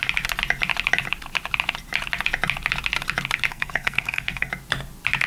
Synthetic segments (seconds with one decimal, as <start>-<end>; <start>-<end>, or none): 3.5-4.5